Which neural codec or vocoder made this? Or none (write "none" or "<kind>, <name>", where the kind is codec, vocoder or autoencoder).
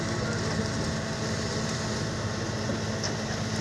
none